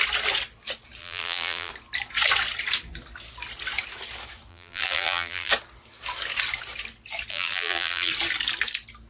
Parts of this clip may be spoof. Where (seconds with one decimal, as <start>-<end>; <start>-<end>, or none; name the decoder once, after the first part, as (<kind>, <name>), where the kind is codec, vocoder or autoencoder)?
1.0-1.7 (vocoder, BigVGAN v2); 4.5-5.5; 7.3-8.1